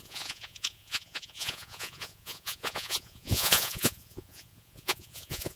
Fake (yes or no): yes